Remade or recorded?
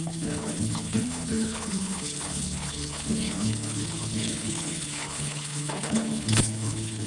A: remade